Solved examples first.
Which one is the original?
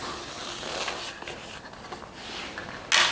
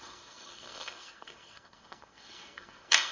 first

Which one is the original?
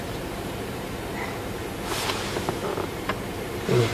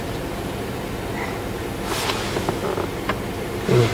second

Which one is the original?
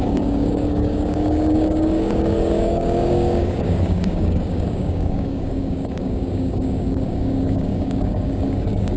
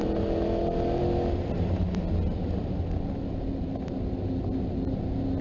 second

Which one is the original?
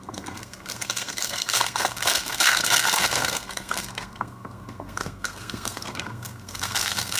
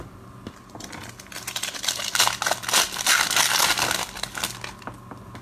second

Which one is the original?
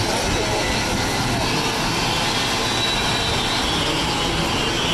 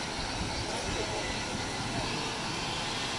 first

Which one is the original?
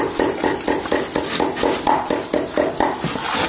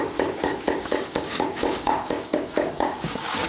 first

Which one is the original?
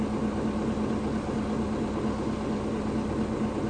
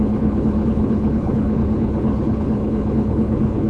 first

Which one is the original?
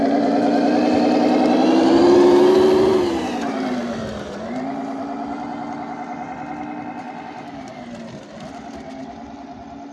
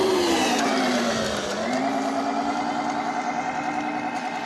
second